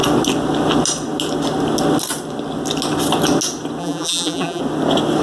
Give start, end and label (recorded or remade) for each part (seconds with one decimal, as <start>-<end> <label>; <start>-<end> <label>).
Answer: 0.0-3.8 recorded; 3.8-4.6 remade; 4.6-5.2 recorded